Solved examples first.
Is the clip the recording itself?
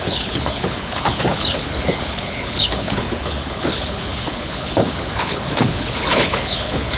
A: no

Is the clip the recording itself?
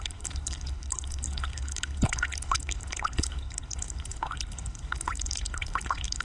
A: no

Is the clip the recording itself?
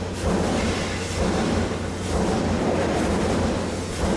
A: yes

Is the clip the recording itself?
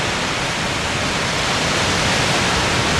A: yes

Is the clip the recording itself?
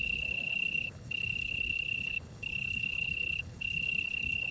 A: no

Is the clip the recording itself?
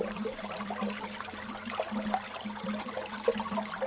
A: yes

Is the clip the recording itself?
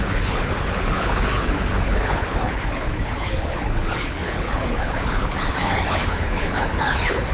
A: no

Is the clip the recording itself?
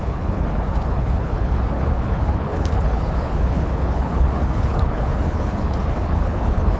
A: no